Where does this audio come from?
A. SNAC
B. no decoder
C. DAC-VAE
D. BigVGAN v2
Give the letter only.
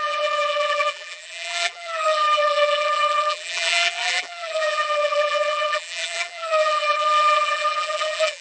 D